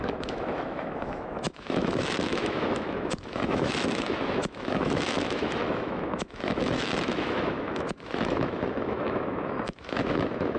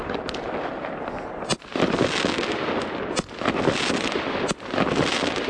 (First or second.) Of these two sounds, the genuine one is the second